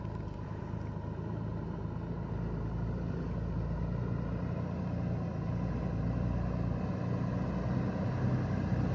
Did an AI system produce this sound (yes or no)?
no